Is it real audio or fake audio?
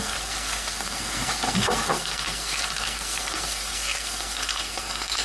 fake